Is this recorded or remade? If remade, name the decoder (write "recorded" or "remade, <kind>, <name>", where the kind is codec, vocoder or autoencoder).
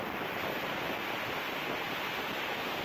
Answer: recorded